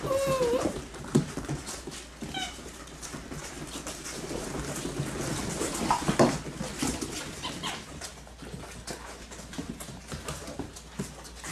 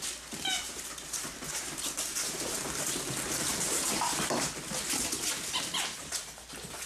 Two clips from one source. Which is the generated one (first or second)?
second